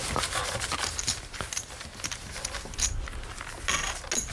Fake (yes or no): no